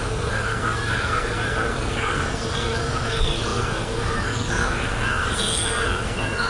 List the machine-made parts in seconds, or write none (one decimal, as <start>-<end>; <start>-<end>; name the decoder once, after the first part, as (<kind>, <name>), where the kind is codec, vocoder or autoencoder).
0.0-6.5 (codec, SNAC)